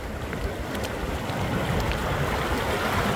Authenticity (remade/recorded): recorded